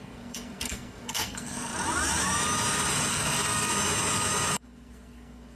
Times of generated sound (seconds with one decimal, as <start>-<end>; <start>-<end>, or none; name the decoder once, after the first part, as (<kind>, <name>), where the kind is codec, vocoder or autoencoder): 0.0-1.7 (codec, SNAC); 3.1-3.7; 4.5-5.6